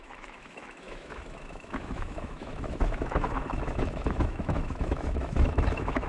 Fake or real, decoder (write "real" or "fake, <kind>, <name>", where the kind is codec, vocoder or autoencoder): fake, autoencoder, DAC-VAE